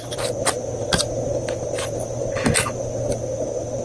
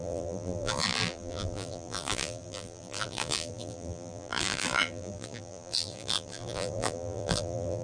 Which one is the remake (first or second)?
second